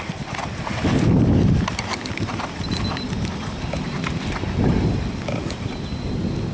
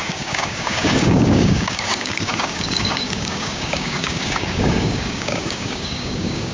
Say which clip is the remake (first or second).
second